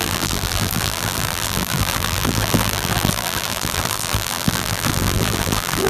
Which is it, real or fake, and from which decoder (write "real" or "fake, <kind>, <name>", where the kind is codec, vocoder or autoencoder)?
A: fake, vocoder, BigVGAN v2